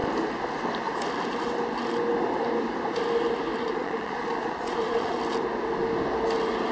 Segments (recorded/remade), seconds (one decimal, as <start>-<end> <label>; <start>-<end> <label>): 0.0-3.6 recorded; 3.6-5.2 remade; 5.2-6.7 recorded